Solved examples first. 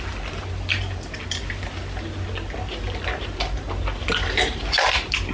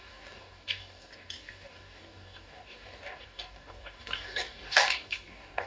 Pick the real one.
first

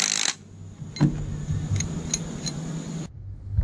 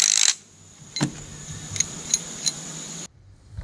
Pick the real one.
first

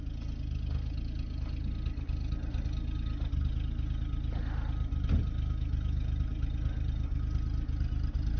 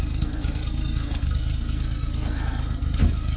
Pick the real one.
first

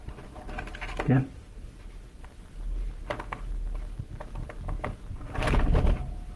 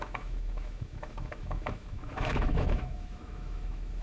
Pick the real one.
first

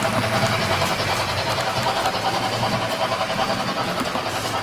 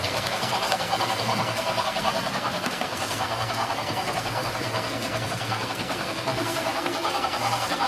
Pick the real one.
first